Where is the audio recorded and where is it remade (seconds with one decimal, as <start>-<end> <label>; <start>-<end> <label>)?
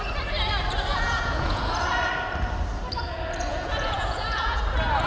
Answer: 0.0-0.9 recorded; 0.9-1.6 remade; 1.6-3.5 recorded; 3.5-4.6 remade; 4.6-5.1 recorded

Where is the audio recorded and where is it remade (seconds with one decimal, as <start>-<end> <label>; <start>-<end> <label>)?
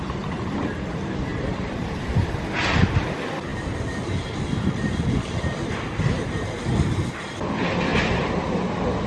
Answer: 0.0-1.3 recorded; 1.3-2.3 remade; 2.3-7.9 recorded; 7.9-9.1 remade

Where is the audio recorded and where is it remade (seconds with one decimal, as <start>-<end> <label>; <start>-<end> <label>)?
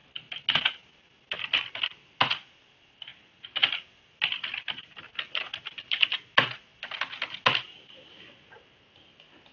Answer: 0.0-9.5 recorded